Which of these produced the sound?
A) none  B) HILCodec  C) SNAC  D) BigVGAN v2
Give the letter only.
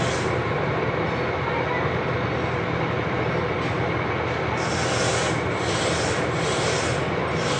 A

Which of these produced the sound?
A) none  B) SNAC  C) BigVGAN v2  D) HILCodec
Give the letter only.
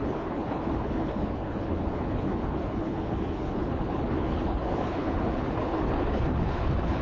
D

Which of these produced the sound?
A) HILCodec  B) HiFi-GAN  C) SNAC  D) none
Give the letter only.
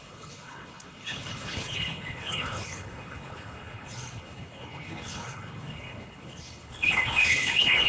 A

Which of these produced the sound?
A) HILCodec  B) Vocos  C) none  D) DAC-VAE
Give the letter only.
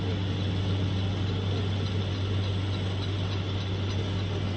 C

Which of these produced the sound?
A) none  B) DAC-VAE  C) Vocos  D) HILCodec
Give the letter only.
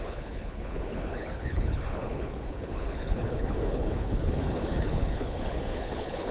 D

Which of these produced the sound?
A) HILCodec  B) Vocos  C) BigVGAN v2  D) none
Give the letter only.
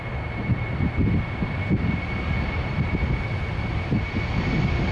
D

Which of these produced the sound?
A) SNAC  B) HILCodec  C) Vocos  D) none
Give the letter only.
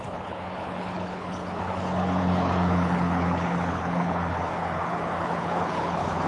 B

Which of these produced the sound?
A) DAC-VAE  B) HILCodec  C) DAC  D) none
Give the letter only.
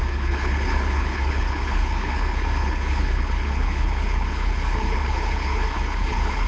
B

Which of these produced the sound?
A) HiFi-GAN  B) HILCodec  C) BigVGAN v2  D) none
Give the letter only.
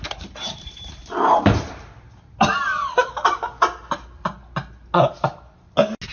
D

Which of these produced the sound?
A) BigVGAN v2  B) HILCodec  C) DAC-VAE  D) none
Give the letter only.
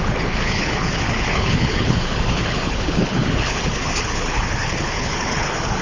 B